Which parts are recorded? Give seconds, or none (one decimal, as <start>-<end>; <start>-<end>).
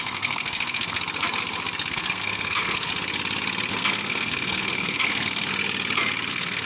1.0-1.9; 2.9-3.7; 5.5-6.3